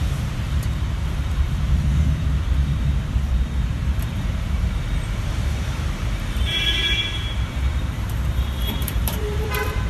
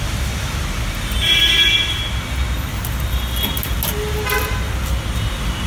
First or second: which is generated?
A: first